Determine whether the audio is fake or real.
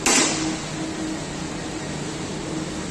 real